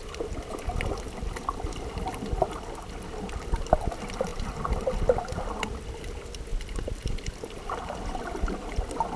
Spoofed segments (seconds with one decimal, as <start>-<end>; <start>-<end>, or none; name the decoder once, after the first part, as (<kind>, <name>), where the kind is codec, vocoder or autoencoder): 4.3-5.4 (vocoder, BigVGAN v2)